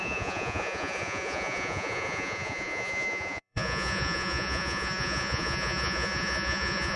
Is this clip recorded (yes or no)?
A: no